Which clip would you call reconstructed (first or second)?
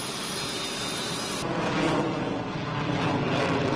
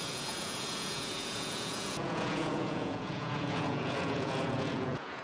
second